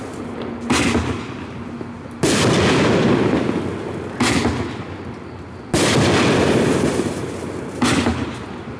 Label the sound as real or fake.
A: real